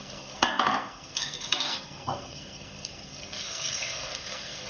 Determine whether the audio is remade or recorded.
remade